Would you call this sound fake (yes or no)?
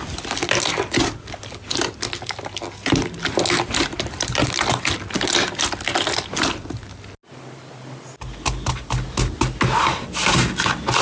no